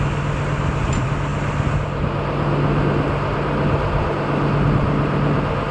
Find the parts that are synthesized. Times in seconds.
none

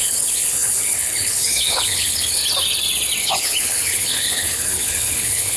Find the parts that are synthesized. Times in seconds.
0.0-2.4 (codec, HILCodec); 3.2-5.6

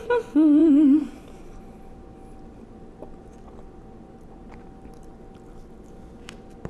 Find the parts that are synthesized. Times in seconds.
none

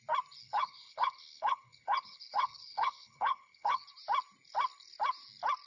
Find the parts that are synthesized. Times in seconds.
0.4-3.8 (codec, HILCodec)

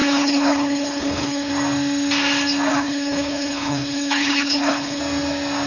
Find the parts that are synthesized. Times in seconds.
0.0-1.5 (codec, HILCodec); 2.7-5.0